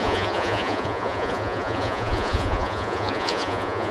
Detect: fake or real fake